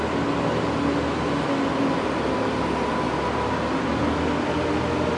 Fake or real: real